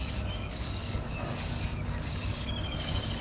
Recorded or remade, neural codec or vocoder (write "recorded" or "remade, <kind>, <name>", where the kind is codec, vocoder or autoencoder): remade, codec, DAC